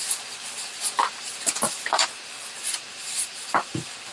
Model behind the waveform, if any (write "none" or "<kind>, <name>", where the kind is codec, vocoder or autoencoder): none